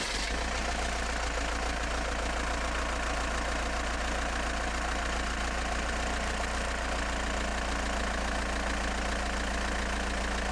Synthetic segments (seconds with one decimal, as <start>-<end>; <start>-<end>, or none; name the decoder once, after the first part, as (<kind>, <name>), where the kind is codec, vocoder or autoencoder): none